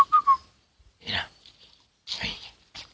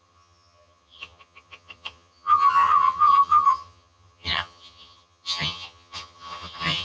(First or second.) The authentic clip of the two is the first